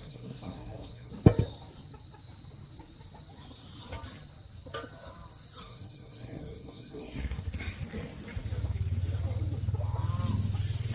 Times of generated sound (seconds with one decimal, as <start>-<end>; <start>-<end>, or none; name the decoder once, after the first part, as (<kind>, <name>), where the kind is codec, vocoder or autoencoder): 0.0-1.1 (codec, SNAC); 5.6-7.5

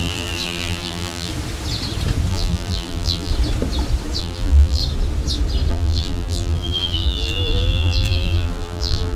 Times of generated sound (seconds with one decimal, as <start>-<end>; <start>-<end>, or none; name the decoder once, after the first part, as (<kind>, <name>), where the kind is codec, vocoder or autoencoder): 0.0-1.3 (vocoder, BigVGAN v2); 2.3-3.3; 4.2-4.8; 5.7-9.2

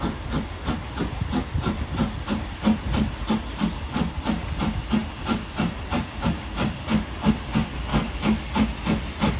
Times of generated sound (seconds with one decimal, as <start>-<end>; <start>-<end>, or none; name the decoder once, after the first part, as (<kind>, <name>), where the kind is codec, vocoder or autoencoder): 7.9-8.4 (autoencoder, DAC-VAE)

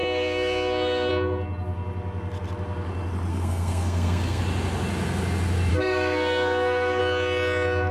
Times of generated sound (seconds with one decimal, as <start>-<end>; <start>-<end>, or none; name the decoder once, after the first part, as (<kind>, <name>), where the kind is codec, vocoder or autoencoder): 0.0-1.1 (codec, SNAC); 3.3-4.4; 5.7-7.0

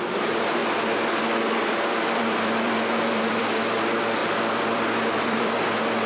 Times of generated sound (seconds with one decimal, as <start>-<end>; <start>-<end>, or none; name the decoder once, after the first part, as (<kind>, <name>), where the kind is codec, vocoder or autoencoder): 0.0-0.6 (vocoder, BigVGAN v2); 1.6-6.1

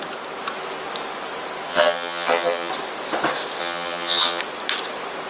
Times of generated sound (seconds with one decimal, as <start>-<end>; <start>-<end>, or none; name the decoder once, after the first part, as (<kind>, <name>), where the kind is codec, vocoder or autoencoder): 1.7-2.7 (vocoder, HiFi-GAN); 3.6-4.4

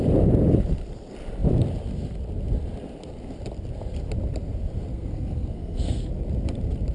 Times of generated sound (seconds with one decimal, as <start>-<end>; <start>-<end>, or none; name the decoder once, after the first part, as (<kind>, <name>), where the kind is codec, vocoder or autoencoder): 4.9-6.1 (codec, SNAC)

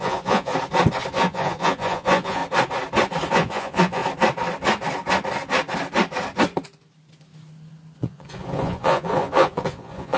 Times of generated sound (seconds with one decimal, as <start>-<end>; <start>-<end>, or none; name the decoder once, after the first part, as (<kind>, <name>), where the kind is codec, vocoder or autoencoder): 0.0-0.5 (vocoder, Vocos); 1.1-2.4; 3.3-4.0; 8.0-10.2